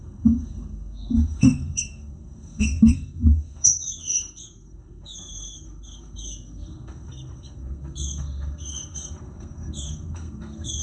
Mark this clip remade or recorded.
remade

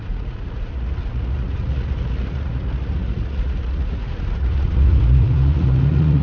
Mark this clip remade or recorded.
remade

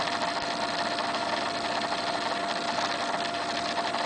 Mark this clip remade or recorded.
recorded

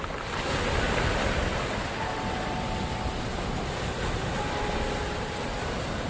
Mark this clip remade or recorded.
recorded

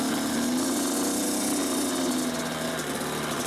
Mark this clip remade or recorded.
recorded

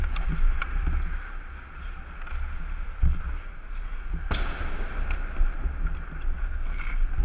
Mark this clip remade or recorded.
recorded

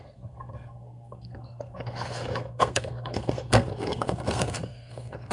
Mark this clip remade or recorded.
remade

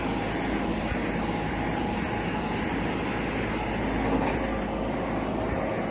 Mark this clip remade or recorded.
recorded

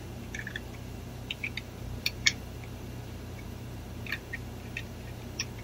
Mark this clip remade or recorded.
remade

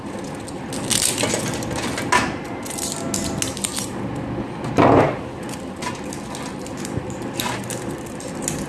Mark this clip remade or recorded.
recorded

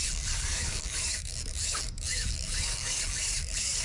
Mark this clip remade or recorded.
remade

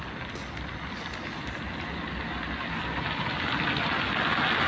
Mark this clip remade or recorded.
recorded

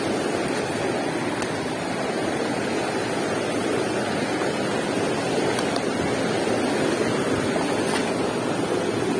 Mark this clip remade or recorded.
recorded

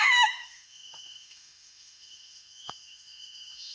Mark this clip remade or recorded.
remade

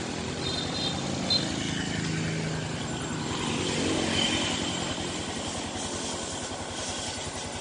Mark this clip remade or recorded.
recorded